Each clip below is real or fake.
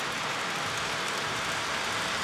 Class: real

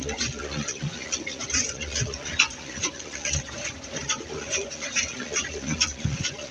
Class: fake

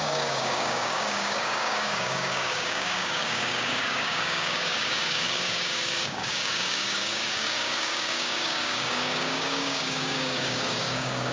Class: fake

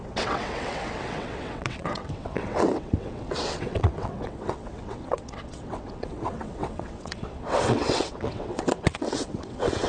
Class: fake